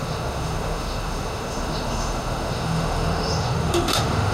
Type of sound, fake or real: fake